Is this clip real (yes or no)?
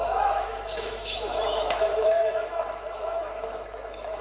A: no